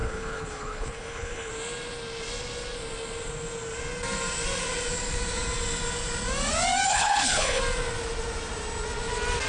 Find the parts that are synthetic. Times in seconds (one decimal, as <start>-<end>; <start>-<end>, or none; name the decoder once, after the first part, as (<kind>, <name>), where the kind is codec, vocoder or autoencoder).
0.0-1.5 (codec, HILCodec); 6.9-7.6